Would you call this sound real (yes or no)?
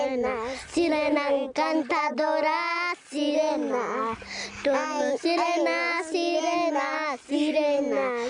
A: yes